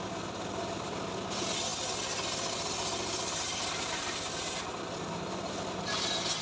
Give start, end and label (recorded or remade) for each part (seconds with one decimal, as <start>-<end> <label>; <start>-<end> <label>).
0.0-6.4 recorded

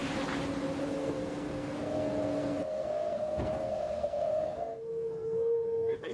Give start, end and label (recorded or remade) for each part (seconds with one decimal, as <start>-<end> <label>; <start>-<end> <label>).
0.0-0.9 recorded; 0.9-6.1 remade

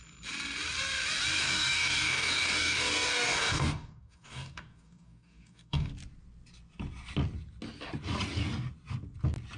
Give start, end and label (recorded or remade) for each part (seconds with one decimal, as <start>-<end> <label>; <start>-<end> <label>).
0.0-1.4 recorded; 1.4-5.9 remade; 5.9-9.6 recorded